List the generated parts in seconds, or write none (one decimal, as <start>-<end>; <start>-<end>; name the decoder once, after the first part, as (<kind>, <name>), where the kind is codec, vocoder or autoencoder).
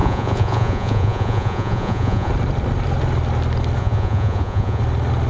0.0-2.3 (vocoder, Vocos); 3.8-4.8